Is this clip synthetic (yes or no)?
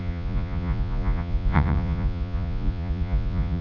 yes